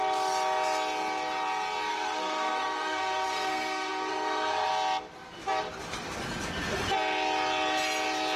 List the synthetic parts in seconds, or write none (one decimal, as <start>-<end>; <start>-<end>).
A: 1.9-4.7